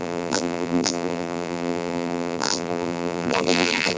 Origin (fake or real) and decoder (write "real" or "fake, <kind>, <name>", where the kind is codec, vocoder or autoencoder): fake, vocoder, BigVGAN v2